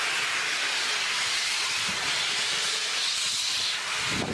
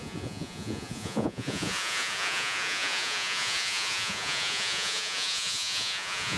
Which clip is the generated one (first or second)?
second